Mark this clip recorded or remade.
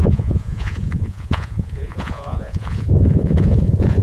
remade